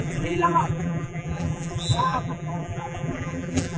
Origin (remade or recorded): remade